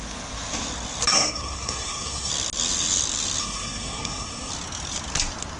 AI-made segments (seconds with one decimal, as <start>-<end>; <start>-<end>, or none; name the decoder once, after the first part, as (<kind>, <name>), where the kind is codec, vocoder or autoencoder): 1.1-2.3 (codec, SNAC); 3.4-4.5